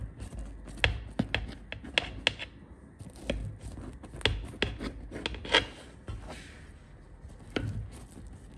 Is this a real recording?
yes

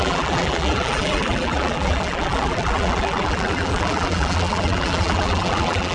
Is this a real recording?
no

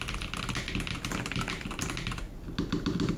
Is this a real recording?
yes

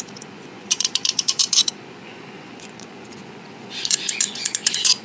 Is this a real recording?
no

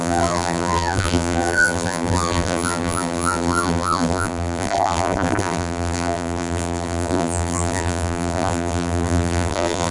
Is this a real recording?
no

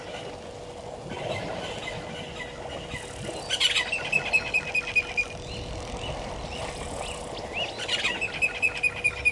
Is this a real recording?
yes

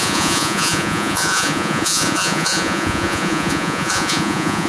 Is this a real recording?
no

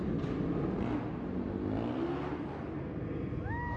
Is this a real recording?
yes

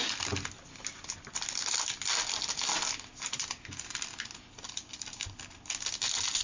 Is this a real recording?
yes